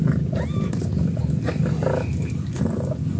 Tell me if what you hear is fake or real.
real